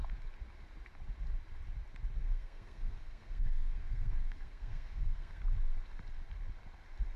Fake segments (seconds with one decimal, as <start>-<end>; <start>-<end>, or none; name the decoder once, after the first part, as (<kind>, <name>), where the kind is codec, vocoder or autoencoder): 2.2-5.4 (codec, SNAC)